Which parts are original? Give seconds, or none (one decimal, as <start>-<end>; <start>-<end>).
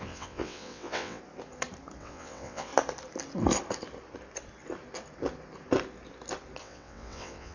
1.2-2.0; 2.7-6.6